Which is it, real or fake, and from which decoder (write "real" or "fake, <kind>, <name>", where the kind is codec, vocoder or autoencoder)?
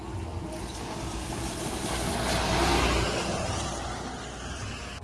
real